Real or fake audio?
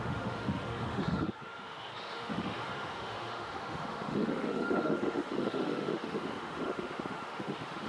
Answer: fake